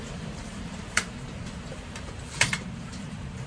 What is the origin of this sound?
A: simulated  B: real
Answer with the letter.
A